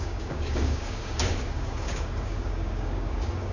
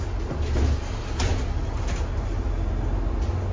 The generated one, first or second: first